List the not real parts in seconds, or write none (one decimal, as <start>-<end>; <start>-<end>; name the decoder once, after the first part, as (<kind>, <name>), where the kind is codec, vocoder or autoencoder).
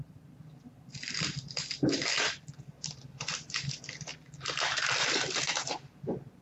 none